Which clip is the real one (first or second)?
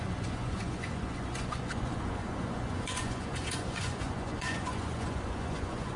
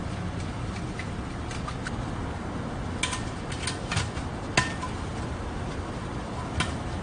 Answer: second